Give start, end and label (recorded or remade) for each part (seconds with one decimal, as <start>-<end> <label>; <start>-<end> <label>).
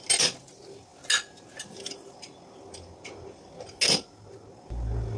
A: 0.0-5.2 recorded